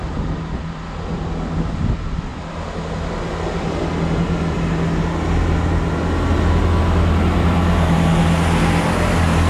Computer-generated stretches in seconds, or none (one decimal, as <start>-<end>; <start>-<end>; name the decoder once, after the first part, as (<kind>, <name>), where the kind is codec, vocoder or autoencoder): none